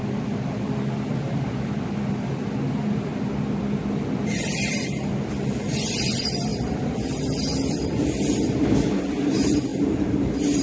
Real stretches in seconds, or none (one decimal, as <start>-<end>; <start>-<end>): none